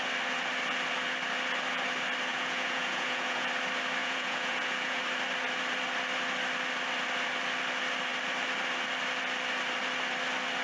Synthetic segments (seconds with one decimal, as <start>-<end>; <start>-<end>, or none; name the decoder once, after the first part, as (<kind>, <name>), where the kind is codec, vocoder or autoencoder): 2.3-3.5 (vocoder, Vocos); 4.0-5.0